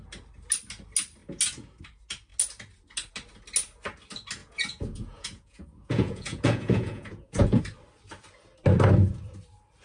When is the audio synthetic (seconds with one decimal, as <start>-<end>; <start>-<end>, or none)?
4.4-7.6